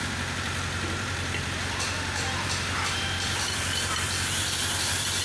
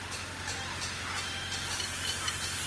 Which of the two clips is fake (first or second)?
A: first